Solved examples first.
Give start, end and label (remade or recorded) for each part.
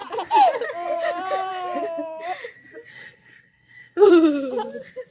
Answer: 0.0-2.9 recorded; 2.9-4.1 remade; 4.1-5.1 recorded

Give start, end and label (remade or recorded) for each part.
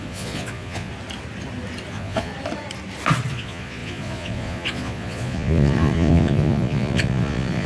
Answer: 0.0-0.9 remade; 0.9-1.9 recorded; 1.9-2.3 remade; 2.3-3.3 recorded; 3.3-7.7 remade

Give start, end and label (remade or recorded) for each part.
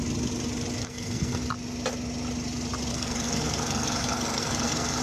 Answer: 0.0-0.8 recorded; 0.8-1.4 remade; 1.4-2.9 recorded; 2.9-5.0 remade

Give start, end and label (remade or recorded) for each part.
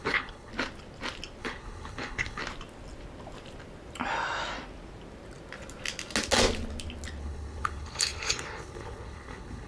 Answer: 0.0-0.5 remade; 0.5-1.4 recorded; 1.4-2.4 remade; 2.4-7.2 recorded; 7.2-9.7 remade